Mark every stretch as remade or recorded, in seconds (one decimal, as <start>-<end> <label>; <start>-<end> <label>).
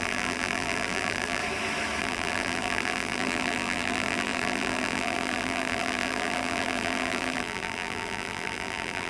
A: 0.0-1.4 remade; 1.4-2.0 recorded; 2.0-9.1 remade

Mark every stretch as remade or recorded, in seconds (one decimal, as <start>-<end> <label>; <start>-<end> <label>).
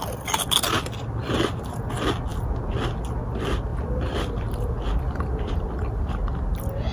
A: 0.0-3.7 recorded; 3.7-6.1 remade; 6.1-6.9 recorded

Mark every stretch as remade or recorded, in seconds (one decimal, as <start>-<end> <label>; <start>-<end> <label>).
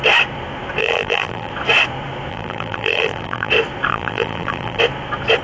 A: 0.0-0.8 recorded; 0.8-1.5 remade; 1.5-2.3 recorded; 2.3-3.5 remade; 3.5-3.9 recorded; 3.9-4.8 remade; 4.8-5.4 recorded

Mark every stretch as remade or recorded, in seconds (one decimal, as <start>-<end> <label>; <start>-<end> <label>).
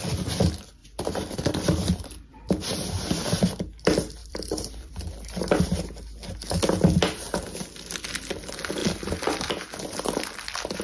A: 0.0-0.8 recorded; 0.8-2.3 remade; 2.3-4.2 recorded; 4.2-4.9 remade; 4.9-8.8 recorded; 8.8-10.8 remade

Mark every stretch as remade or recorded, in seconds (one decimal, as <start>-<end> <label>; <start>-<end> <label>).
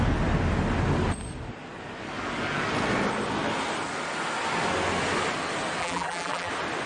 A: 0.0-5.8 recorded; 5.8-6.5 remade; 6.5-6.9 recorded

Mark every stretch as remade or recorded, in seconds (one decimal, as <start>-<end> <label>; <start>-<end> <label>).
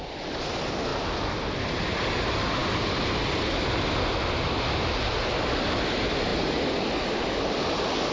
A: 0.0-0.9 recorded; 0.9-1.8 remade; 1.8-8.1 recorded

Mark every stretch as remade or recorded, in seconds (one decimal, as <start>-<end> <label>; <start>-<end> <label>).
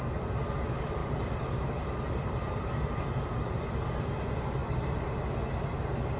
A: 0.0-1.0 recorded; 1.0-4.1 remade; 4.1-6.2 recorded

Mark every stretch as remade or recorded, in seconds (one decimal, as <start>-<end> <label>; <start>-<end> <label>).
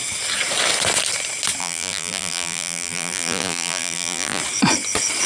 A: 0.0-1.6 recorded; 1.6-4.4 remade; 4.4-5.3 recorded